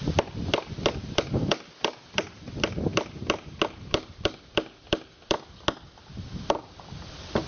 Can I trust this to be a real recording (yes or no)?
yes